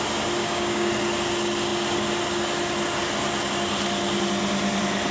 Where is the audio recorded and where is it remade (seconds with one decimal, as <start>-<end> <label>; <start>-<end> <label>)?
0.0-0.4 recorded; 0.4-0.9 remade; 0.9-5.1 recorded